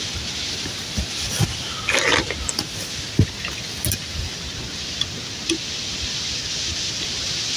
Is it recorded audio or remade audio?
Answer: recorded